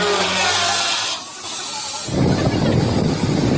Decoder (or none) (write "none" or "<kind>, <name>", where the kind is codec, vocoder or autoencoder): none